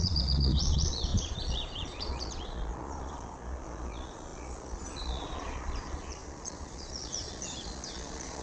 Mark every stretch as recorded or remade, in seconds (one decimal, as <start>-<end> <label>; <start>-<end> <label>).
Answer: 0.0-8.4 remade